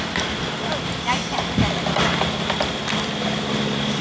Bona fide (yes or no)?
yes